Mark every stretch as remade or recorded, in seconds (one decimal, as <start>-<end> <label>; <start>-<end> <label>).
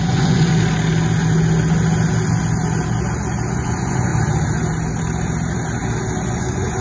0.0-0.5 remade; 0.5-3.5 recorded; 3.5-4.1 remade; 4.1-6.2 recorded; 6.2-6.8 remade